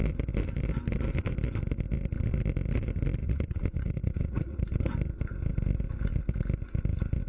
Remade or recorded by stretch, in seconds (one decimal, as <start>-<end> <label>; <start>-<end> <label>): 0.0-3.2 recorded; 3.2-4.6 remade; 4.6-7.3 recorded